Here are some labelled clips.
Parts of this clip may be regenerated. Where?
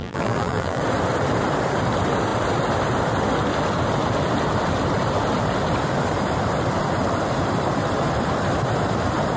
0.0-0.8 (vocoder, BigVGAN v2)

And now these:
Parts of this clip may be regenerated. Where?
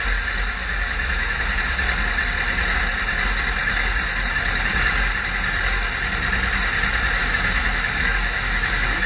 0.6-1.4 (autoencoder, DAC-VAE); 7.2-9.1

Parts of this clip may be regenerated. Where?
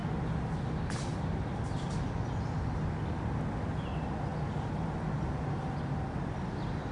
none